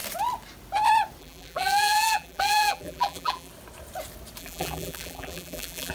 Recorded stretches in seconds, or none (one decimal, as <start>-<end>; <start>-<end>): 0.0-1.2; 3.5-4.4